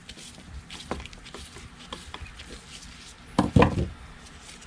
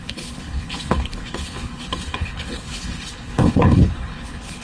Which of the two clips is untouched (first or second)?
first